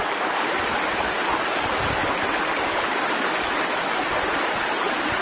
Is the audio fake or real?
real